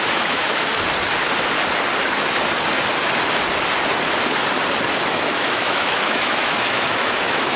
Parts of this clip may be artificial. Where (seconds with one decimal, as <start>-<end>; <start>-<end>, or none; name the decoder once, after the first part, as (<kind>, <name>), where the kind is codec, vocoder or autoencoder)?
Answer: 0.0-0.7 (autoencoder, DAC-VAE); 5.1-7.6